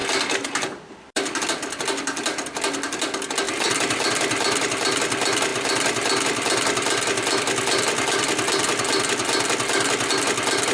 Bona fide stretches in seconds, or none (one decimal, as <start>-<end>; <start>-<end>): 0.0-10.7